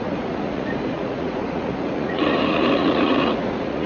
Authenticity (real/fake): fake